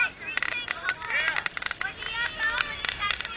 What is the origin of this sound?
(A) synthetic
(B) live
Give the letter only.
B